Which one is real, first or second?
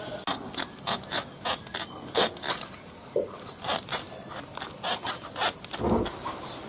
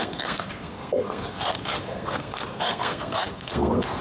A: first